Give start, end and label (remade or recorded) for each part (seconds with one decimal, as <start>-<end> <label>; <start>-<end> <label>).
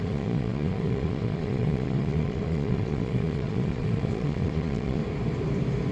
0.0-5.0 remade; 5.0-5.9 recorded